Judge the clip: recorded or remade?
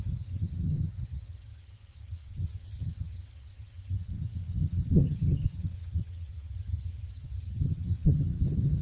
remade